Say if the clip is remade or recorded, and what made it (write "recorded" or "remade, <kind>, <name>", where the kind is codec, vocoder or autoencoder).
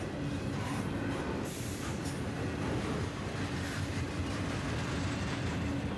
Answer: recorded